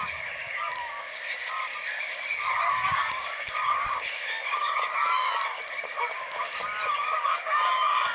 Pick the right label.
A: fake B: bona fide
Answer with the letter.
A